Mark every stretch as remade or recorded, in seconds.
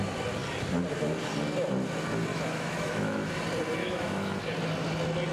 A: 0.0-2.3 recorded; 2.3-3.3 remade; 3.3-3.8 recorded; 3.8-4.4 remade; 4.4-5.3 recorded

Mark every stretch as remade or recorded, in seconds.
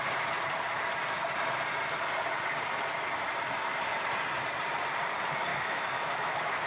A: 0.0-5.5 recorded; 5.5-6.7 remade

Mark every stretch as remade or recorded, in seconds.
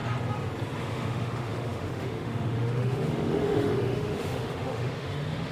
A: 0.0-0.8 recorded; 0.8-5.5 remade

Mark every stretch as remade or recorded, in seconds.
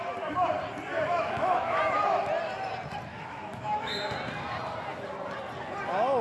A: 0.0-1.0 recorded; 1.0-1.8 remade; 1.8-3.1 recorded; 3.1-4.1 remade; 4.1-6.2 recorded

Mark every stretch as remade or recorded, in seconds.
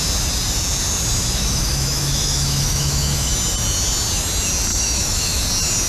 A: 0.0-1.2 recorded; 1.2-3.3 remade; 3.3-4.7 recorded; 4.7-5.4 remade; 5.4-5.9 recorded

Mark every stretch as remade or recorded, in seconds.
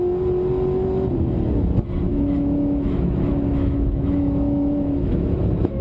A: 0.0-2.1 recorded; 2.1-5.8 remade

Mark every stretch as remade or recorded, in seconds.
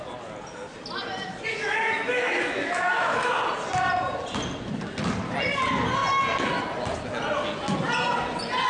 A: 0.0-1.5 recorded; 1.5-3.3 remade; 3.3-8.7 recorded